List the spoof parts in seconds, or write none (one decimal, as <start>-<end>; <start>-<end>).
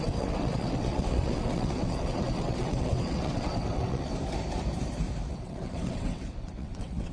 0.0-4.1; 5.3-7.1